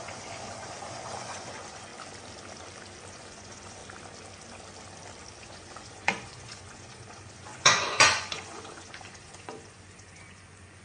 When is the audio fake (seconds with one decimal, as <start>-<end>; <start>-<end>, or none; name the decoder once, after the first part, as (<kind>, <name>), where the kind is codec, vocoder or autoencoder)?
0.0-1.9 (vocoder, Vocos); 3.1-3.8; 5.4-10.8